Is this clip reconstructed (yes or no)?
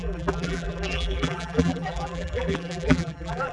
yes